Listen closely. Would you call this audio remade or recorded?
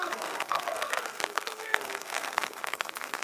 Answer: remade